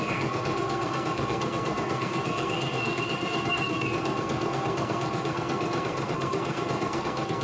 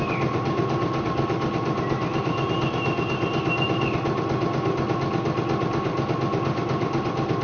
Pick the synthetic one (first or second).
first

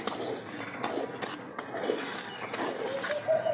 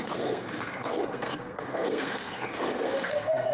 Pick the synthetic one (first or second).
second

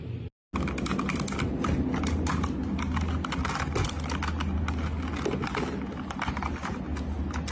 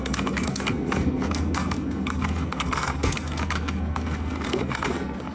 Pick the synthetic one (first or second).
second